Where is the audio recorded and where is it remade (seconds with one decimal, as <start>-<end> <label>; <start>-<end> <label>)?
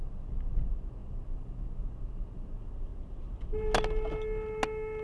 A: 0.0-5.0 recorded